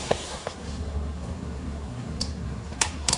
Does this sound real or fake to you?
fake